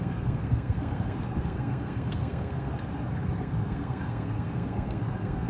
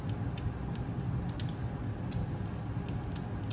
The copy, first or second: first